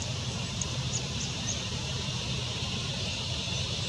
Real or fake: fake